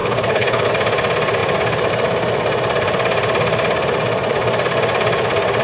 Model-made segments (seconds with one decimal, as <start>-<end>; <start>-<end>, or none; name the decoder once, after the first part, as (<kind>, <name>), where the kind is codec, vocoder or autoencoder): 0.0-0.7 (codec, HILCodec)